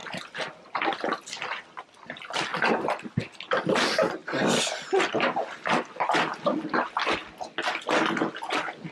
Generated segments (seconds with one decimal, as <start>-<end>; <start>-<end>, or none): none

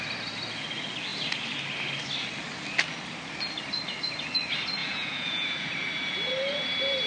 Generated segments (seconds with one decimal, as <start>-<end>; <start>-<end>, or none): 4.8-5.7

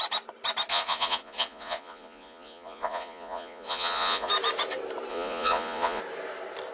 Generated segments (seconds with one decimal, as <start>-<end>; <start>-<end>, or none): 0.7-4.3; 5.1-6.0